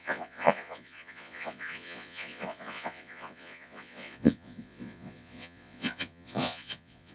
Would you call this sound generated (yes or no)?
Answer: yes